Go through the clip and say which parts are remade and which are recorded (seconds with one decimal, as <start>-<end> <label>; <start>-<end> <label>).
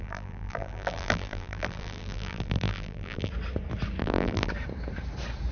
0.0-3.3 remade; 3.3-4.0 recorded; 4.0-4.5 remade; 4.5-5.5 recorded